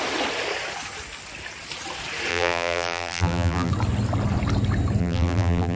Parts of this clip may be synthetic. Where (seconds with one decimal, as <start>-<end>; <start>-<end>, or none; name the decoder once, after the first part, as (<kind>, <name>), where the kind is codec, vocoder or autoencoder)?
2.3-3.7 (vocoder, BigVGAN v2); 5.0-5.8